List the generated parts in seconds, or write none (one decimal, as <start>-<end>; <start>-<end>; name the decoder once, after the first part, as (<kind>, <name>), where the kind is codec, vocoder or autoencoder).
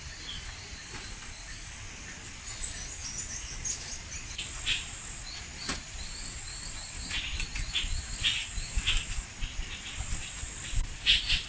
none